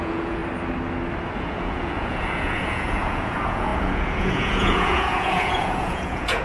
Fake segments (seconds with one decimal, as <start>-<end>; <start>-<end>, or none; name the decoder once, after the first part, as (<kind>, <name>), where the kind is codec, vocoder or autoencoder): 0.0-0.4 (vocoder, Vocos); 1.4-6.4